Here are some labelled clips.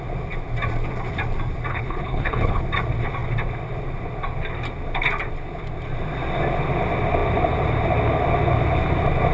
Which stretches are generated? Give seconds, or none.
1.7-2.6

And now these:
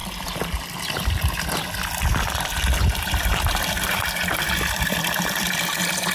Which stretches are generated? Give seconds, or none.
3.7-6.1

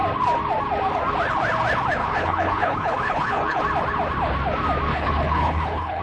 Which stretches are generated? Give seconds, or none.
2.0-3.6; 4.9-6.0

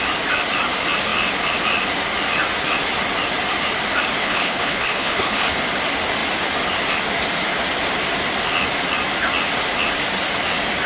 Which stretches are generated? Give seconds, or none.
4.2-5.6

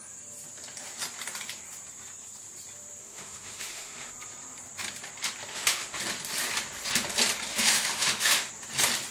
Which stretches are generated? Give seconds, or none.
3.0-4.1; 5.5-6.0; 7.5-8.5

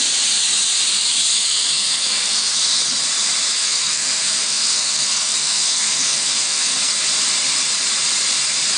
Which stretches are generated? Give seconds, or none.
1.3-2.6; 3.6-6.9

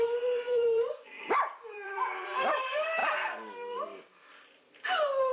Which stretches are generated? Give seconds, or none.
0.0-5.3